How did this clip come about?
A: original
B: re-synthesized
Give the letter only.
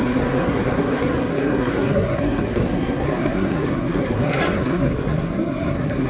B